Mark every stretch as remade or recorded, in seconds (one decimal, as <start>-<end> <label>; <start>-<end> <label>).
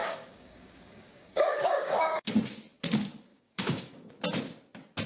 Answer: 0.0-2.3 remade; 2.3-3.3 recorded; 3.3-4.1 remade; 4.1-5.1 recorded